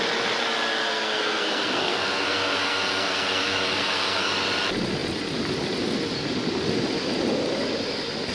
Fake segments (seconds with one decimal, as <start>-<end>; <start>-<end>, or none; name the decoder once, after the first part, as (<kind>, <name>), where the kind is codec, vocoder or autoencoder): 0.7-4.3 (codec, SNAC)